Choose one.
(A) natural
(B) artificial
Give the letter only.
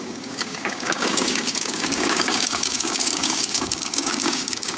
B